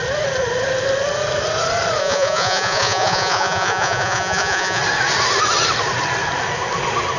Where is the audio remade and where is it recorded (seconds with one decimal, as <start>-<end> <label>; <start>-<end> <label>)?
0.0-2.0 recorded; 2.0-4.8 remade; 4.8-7.2 recorded